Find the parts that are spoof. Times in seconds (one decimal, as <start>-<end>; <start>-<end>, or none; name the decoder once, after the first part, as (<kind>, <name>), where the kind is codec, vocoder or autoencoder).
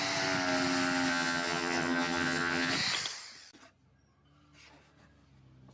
1.1-2.7 (vocoder, HiFi-GAN)